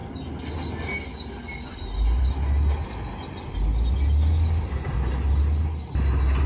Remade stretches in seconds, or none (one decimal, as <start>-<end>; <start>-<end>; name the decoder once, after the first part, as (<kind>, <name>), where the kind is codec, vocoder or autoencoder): none

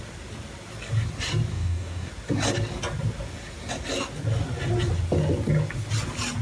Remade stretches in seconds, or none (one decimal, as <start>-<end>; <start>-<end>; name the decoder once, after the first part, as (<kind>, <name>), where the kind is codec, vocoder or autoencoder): 1.5-2.1 (codec, DAC)

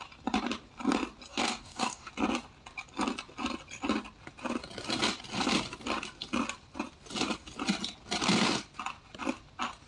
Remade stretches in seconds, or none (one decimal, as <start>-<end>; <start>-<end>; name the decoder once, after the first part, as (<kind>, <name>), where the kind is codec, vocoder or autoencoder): 1.3-2.1 (codec, DAC)

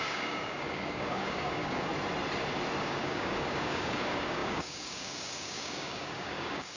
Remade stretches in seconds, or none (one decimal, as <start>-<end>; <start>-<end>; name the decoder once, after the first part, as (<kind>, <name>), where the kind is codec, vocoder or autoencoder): 0.0-1.9 (codec, DAC); 2.8-6.8

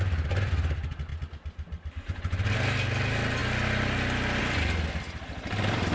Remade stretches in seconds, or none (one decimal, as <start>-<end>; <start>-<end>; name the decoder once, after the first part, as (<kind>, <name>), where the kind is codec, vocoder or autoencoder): none

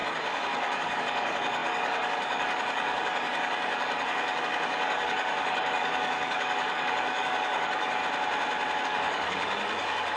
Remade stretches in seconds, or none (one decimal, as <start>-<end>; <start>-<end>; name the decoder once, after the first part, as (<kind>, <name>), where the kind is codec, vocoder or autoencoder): 0.0-8.0 (codec, DAC); 8.8-10.2